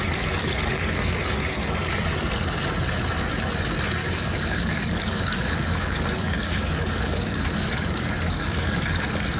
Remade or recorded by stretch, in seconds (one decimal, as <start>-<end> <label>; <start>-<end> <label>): 0.0-0.4 recorded; 0.4-1.2 remade; 1.2-4.0 recorded; 4.0-9.0 remade; 9.0-9.4 recorded